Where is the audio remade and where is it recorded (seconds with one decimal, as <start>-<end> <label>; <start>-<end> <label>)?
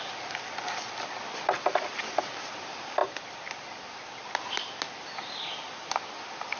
0.0-3.0 recorded; 3.0-4.4 remade; 4.4-6.6 recorded